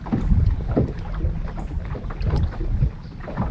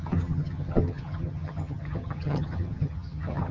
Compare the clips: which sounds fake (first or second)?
second